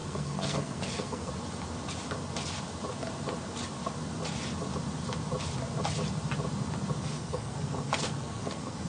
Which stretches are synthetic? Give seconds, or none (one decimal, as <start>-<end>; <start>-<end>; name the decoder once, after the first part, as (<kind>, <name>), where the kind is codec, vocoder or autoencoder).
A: 0.0-1.3 (codec, SNAC); 7.0-8.9